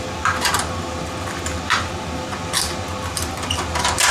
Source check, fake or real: real